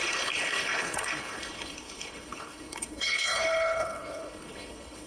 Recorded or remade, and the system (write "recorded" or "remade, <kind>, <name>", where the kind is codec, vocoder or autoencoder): remade, codec, HILCodec